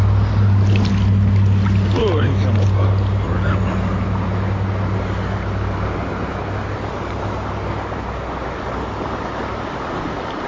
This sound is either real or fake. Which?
real